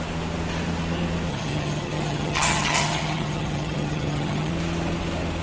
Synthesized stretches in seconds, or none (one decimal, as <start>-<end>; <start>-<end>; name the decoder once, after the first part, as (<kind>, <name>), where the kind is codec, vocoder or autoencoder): 1.3-4.5 (vocoder, HiFi-GAN)